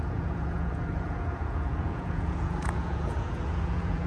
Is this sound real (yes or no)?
no